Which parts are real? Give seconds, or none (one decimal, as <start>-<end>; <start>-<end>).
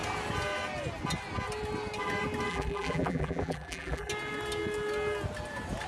0.0-2.5; 4.1-5.9